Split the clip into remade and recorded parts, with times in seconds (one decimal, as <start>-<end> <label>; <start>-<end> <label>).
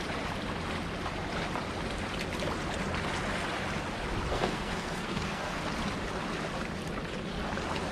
0.0-4.3 recorded; 4.3-5.6 remade; 5.6-7.9 recorded